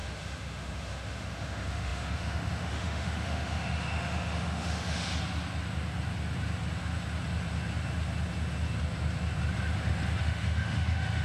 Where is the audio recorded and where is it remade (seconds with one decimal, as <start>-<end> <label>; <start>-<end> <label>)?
0.0-5.1 remade; 5.1-10.2 recorded; 10.2-11.2 remade